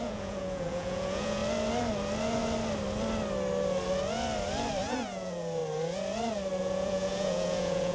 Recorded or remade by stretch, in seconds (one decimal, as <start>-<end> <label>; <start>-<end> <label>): 0.0-1.4 remade; 1.4-4.8 recorded; 4.8-5.6 remade; 5.6-6.6 recorded; 6.6-7.9 remade